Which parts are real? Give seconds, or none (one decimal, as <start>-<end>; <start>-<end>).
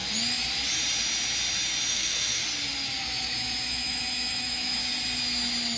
0.0-1.9; 2.4-3.0; 4.8-5.8